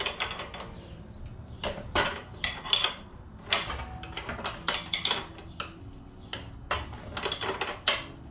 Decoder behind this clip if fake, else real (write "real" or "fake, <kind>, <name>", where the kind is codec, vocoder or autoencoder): real